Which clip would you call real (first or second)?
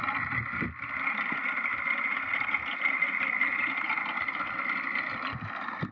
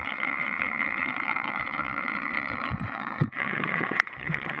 first